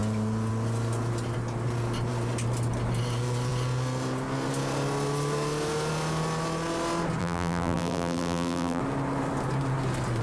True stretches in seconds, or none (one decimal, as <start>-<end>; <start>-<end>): 0.0-7.2; 8.8-10.2